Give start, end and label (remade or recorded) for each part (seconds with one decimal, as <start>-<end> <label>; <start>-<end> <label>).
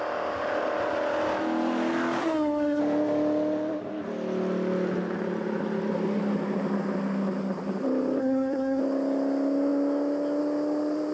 0.0-2.2 recorded; 2.2-2.8 remade; 2.8-8.2 recorded; 8.2-8.8 remade; 8.8-11.1 recorded